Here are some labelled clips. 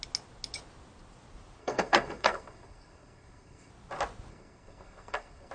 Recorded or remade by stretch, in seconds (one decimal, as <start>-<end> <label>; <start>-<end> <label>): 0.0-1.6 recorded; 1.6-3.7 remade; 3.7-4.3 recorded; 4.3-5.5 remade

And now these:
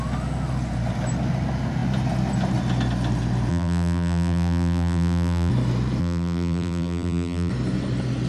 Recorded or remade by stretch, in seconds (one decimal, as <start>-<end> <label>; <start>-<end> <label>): 0.0-3.5 recorded; 3.5-5.5 remade; 5.5-6.0 recorded; 6.0-7.5 remade; 7.5-8.3 recorded

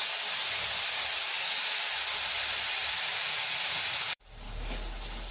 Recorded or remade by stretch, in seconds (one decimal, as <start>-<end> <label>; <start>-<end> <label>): 0.0-2.8 recorded; 2.8-4.2 remade; 4.2-5.3 recorded

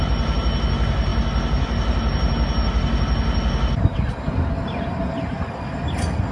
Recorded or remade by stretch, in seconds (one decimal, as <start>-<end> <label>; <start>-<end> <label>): 0.0-6.3 recorded

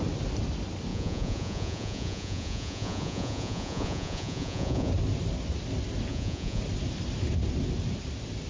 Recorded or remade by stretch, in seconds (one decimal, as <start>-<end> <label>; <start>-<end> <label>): 0.0-0.9 recorded; 0.9-4.9 remade; 4.9-6.1 recorded; 6.1-6.6 remade; 6.6-8.5 recorded

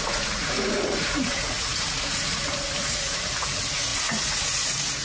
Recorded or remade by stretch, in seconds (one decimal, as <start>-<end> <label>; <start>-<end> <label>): 0.0-5.0 remade

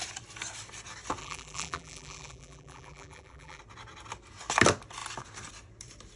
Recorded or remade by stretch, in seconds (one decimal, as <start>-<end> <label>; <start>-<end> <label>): 0.0-1.2 recorded; 1.2-3.6 remade; 3.6-6.2 recorded

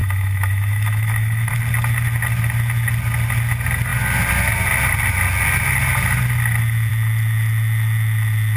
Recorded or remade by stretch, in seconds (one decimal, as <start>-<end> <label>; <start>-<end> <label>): 0.0-1.5 remade; 1.5-8.6 recorded